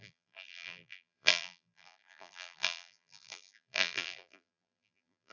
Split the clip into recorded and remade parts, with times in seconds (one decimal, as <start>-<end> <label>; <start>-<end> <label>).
0.0-5.3 remade